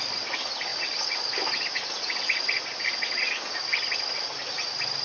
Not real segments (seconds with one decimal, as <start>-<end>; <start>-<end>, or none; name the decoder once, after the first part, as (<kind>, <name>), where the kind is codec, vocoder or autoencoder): none